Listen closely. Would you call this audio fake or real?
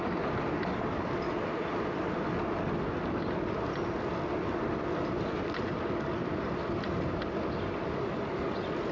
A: real